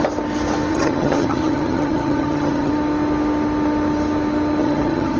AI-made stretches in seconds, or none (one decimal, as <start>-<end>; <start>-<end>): 0.7-2.7; 4.6-5.2